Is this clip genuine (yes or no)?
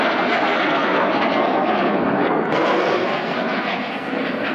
no